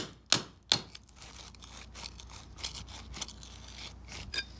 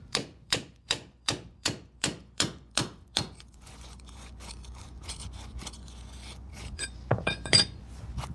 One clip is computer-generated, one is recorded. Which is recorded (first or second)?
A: first